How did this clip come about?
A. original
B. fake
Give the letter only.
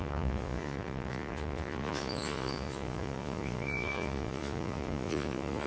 B